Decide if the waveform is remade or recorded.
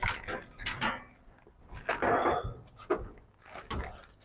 recorded